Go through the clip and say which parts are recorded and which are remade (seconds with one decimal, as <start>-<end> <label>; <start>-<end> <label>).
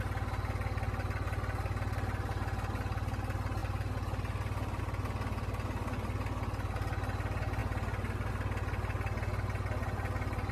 0.0-10.5 recorded